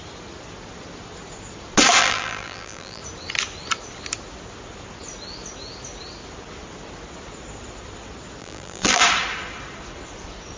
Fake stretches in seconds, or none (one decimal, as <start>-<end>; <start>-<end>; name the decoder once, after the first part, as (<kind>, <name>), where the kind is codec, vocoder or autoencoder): 2.0-3.0 (vocoder, BigVGAN v2); 8.4-9.0